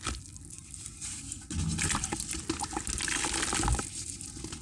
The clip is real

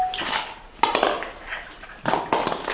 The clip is real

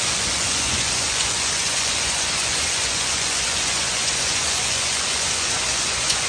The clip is fake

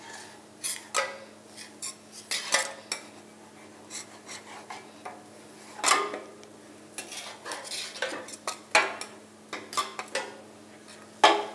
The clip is real